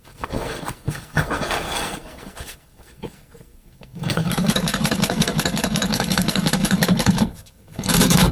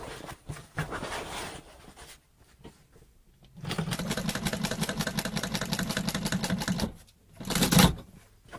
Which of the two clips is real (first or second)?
second